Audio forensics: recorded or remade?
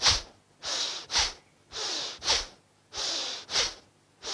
recorded